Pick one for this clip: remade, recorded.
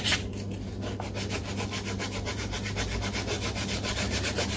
recorded